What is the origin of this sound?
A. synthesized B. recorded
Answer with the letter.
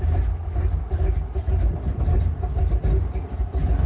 B